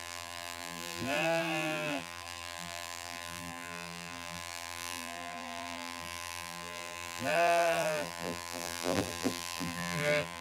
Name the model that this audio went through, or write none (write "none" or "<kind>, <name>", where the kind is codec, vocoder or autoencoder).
vocoder, BigVGAN v2